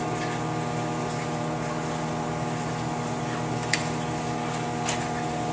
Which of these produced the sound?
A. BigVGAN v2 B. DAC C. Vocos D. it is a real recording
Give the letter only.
D